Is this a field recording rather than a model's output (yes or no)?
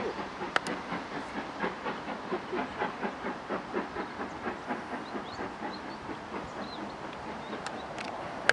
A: yes